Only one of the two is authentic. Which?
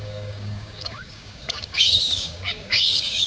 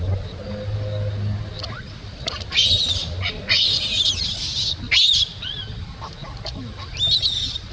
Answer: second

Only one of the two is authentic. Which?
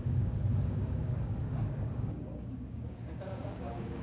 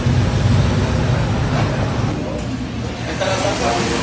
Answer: second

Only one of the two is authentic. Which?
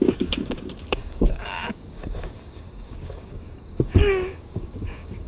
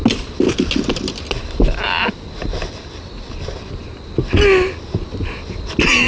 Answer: second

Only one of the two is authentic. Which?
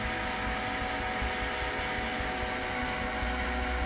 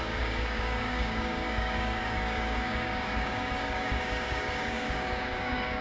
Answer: first